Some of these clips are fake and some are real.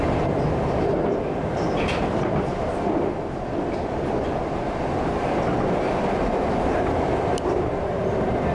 real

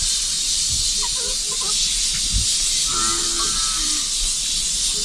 real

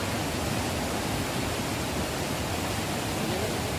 real